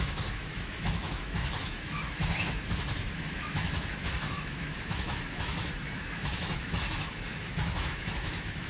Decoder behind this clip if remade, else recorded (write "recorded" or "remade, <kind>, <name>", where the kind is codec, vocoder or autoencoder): remade, autoencoder, DAC-VAE